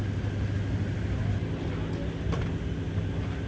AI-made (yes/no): no